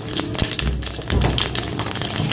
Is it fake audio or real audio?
real